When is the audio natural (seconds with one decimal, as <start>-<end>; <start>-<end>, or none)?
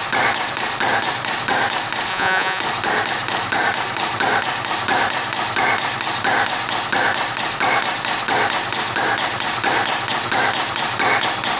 0.0-2.1; 2.6-11.6